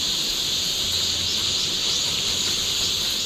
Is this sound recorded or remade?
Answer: recorded